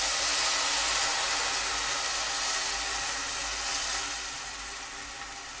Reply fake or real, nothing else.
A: real